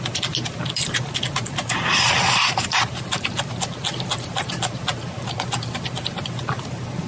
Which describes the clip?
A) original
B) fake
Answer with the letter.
A